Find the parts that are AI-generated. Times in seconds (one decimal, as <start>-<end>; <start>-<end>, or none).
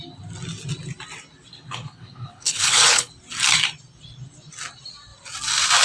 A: 1.5-3.1